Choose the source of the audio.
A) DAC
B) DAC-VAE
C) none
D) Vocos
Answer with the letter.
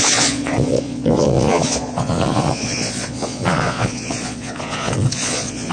D